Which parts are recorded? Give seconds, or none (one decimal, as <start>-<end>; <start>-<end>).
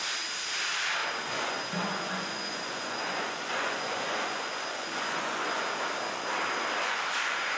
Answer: 0.0-1.0; 5.6-6.8